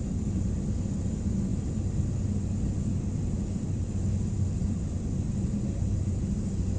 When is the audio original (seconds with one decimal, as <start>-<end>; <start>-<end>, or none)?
0.0-6.8